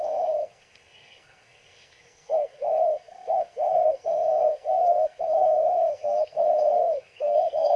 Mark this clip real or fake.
fake